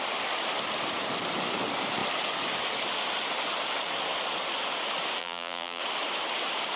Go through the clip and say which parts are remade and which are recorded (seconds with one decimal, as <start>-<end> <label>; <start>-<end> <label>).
0.0-5.2 recorded; 5.2-5.8 remade; 5.8-6.8 recorded